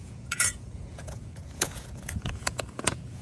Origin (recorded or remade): remade